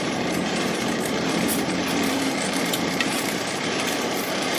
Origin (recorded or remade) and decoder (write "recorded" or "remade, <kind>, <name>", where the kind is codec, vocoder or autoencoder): remade, vocoder, BigVGAN v2